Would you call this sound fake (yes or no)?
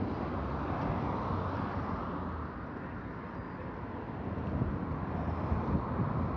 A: no